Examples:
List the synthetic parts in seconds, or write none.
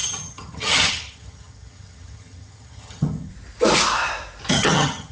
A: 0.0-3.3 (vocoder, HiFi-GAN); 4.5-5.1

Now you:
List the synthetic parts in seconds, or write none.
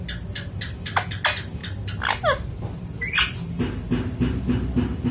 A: none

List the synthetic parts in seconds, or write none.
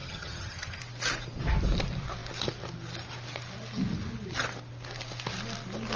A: 0.0-0.8 (vocoder, HiFi-GAN)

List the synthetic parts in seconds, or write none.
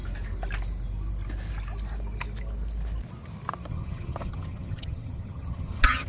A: 3.7-6.1 (vocoder, HiFi-GAN)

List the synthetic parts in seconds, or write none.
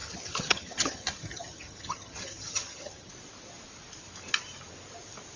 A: 0.0-3.1 (vocoder, HiFi-GAN)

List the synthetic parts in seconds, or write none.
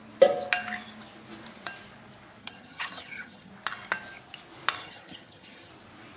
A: 2.4-3.5 (vocoder, HiFi-GAN); 4.8-5.7